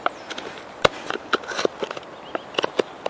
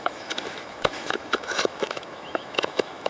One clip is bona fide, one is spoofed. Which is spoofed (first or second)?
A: second